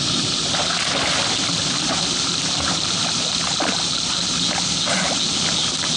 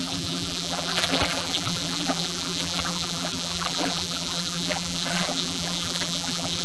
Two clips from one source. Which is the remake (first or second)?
second